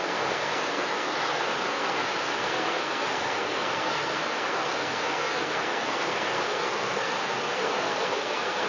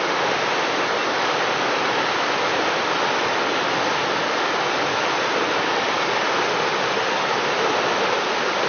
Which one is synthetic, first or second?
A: first